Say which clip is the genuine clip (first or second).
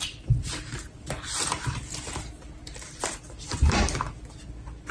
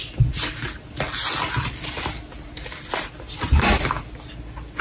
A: second